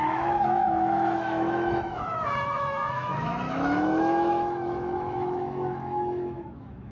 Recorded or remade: remade